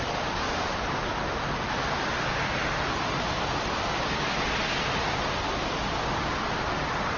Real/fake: real